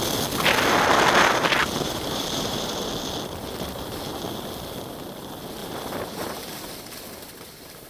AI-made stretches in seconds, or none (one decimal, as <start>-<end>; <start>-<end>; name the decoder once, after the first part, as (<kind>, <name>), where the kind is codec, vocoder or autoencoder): 1.6-2.9 (vocoder, BigVGAN v2); 5.6-6.8